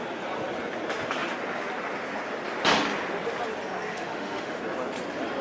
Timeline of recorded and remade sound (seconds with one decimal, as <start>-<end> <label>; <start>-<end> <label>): 0.0-3.9 recorded; 3.9-4.6 remade; 4.6-5.4 recorded